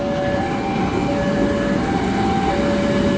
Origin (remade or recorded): recorded